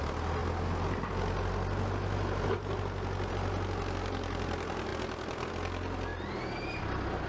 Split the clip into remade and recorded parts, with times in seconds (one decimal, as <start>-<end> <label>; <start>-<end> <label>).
0.0-7.3 recorded